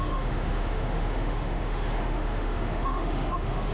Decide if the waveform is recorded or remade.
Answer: remade